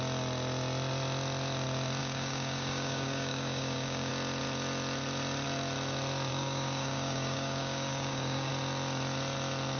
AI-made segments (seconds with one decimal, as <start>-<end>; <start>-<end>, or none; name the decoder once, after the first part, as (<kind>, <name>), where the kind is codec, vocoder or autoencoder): 2.0-4.1 (codec, DAC); 6.3-8.5